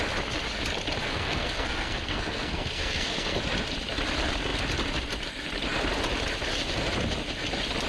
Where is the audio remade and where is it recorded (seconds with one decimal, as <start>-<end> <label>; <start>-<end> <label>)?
0.0-1.0 recorded; 1.0-3.4 remade; 3.4-7.9 recorded